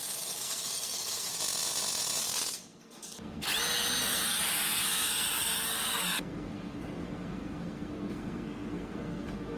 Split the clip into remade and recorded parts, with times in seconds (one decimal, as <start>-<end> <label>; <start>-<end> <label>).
0.0-1.3 remade; 1.3-2.2 recorded; 2.2-3.5 remade; 3.5-4.0 recorded; 4.0-9.6 remade